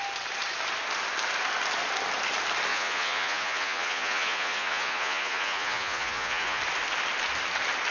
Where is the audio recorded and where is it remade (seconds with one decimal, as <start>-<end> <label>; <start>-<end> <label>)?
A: 0.0-2.7 recorded; 2.7-6.6 remade; 6.6-7.9 recorded